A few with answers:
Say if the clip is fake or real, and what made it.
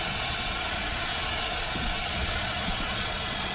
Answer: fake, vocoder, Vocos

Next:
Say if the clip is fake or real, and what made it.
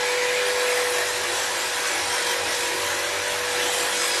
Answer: real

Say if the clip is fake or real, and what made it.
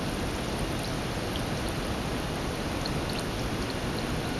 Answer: real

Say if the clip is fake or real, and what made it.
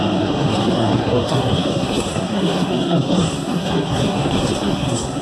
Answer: fake, codec, SNAC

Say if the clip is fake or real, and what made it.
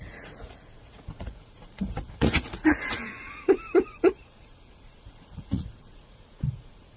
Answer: fake, vocoder, Vocos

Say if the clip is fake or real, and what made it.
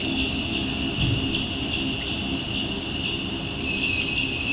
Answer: real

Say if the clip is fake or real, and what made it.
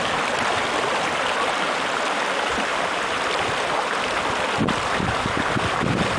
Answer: real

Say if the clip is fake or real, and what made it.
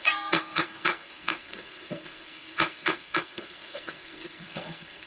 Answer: fake, codec, SNAC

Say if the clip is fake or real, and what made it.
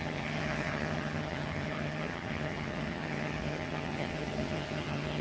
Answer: fake, vocoder, HiFi-GAN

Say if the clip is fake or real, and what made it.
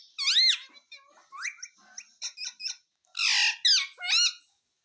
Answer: real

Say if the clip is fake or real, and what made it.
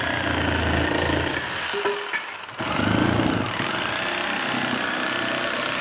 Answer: real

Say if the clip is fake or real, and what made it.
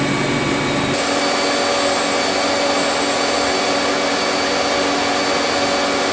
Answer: real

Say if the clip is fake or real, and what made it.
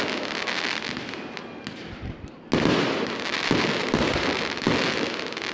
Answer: real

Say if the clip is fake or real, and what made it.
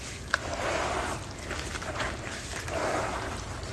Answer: real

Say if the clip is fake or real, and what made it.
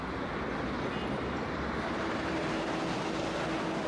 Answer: real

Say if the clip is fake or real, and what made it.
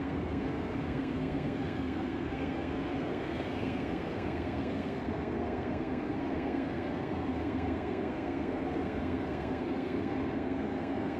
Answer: fake, codec, SNAC